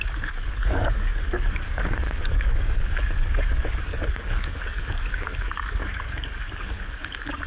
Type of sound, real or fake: fake